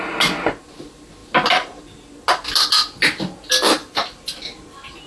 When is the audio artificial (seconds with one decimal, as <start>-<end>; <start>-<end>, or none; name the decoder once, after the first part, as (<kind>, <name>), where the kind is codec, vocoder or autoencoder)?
3.8-4.3 (vocoder, BigVGAN v2)